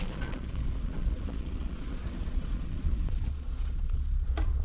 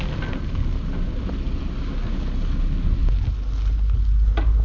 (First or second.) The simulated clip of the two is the first